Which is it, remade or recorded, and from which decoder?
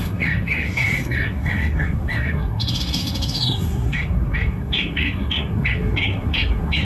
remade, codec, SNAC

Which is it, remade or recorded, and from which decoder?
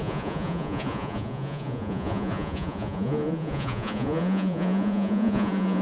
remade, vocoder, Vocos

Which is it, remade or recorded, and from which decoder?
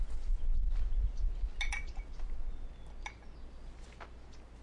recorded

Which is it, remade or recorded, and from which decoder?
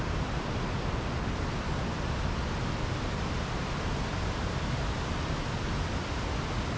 recorded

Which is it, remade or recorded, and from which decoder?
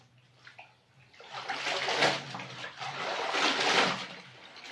recorded